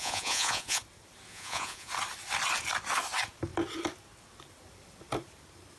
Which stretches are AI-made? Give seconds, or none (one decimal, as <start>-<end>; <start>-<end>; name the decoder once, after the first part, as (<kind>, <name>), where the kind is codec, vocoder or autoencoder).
0.0-0.8 (vocoder, Vocos); 1.3-1.9